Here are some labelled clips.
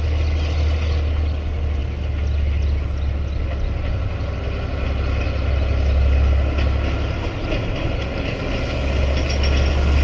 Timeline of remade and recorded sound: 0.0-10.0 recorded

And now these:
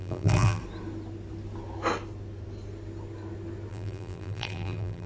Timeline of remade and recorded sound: 0.0-0.6 remade; 0.6-3.7 recorded; 3.7-5.1 remade

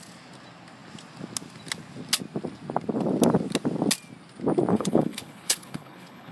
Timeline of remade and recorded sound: 0.0-4.7 recorded; 4.7-6.3 remade